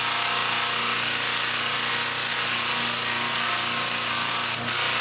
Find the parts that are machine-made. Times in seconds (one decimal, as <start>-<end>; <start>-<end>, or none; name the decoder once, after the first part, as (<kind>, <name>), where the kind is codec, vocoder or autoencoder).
none